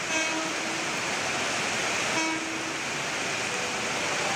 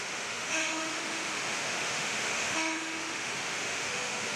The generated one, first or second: second